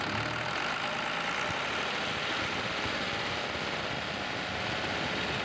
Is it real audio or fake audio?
real